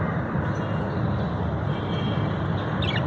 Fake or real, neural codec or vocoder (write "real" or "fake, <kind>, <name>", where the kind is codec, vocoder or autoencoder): real